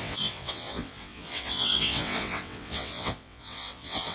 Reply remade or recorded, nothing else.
remade